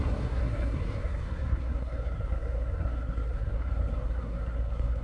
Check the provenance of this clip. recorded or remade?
remade